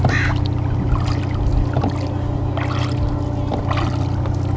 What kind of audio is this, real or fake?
real